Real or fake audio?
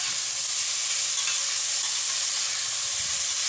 real